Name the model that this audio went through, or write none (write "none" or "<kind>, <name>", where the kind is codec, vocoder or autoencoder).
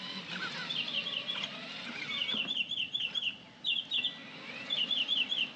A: none